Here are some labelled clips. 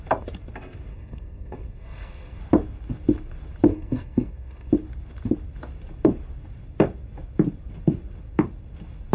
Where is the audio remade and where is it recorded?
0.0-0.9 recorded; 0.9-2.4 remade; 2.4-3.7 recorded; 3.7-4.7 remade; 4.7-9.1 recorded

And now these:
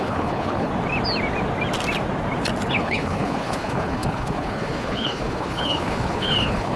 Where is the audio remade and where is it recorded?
0.0-0.7 remade; 0.7-2.7 recorded; 2.7-6.8 remade

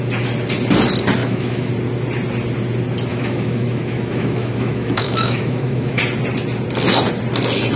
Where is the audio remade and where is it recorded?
0.0-1.2 recorded; 1.2-1.7 remade; 1.7-3.1 recorded; 3.1-6.0 remade; 6.0-7.8 recorded

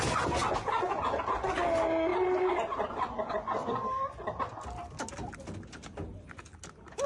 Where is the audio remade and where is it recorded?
0.0-2.1 recorded; 2.1-2.9 remade; 2.9-7.1 recorded

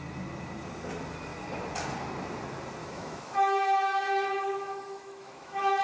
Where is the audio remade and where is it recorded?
0.0-2.8 recorded; 2.8-5.8 remade

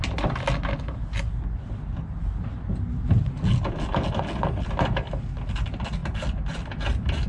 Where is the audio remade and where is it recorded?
0.0-7.3 recorded

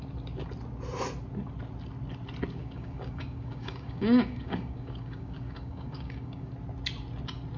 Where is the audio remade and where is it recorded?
0.0-2.6 recorded; 2.6-6.5 remade; 6.5-7.6 recorded